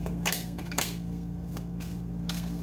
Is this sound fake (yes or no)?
yes